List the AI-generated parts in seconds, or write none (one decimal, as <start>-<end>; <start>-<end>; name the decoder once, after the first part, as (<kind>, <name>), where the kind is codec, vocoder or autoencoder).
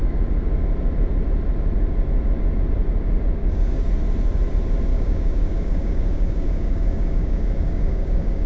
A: 3.4-3.9 (codec, DAC); 4.9-8.5